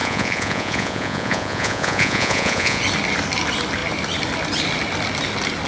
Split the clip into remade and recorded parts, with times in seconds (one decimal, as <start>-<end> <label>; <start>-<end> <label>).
0.0-2.8 remade; 2.8-5.7 recorded

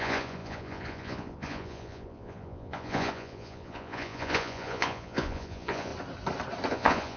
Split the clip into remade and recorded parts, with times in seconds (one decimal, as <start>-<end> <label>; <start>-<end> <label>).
0.0-5.9 remade; 5.9-6.7 recorded; 6.7-7.2 remade

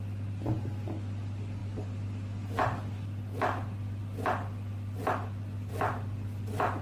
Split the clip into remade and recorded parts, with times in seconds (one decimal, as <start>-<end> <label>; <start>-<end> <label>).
0.0-6.8 recorded

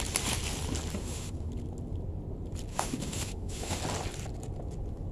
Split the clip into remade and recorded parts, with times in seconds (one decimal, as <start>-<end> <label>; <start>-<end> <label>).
0.0-1.0 recorded; 1.0-1.5 remade; 1.5-2.7 recorded; 2.7-3.8 remade; 3.8-5.1 recorded

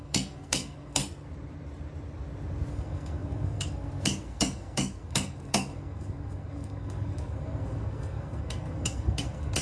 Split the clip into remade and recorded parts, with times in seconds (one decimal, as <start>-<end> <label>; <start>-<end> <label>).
0.0-1.0 remade; 1.0-2.7 recorded; 2.7-9.6 remade

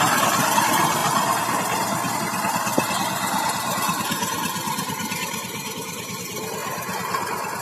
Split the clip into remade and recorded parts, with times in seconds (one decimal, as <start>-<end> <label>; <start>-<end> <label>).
0.0-2.7 recorded; 2.7-6.0 remade; 6.0-7.6 recorded

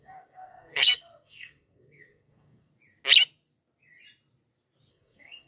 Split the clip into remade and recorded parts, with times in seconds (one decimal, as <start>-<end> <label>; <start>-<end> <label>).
0.0-2.7 remade; 2.7-4.9 recorded; 4.9-5.5 remade